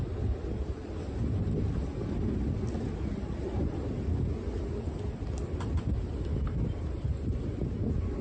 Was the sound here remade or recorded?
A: recorded